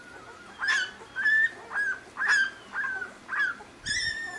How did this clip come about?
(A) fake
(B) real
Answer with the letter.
B